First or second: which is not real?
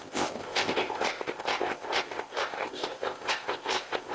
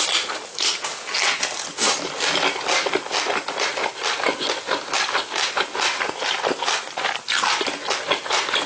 first